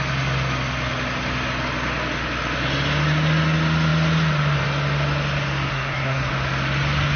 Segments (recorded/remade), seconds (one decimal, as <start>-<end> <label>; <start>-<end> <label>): 0.0-5.7 recorded; 5.7-6.3 remade; 6.3-7.2 recorded